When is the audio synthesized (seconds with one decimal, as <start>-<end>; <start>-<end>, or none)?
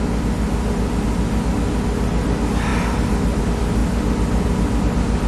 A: none